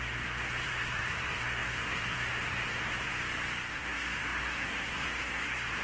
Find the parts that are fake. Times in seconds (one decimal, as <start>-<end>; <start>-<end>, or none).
0.0-3.1; 3.7-5.8